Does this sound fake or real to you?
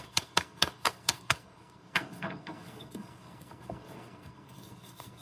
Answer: fake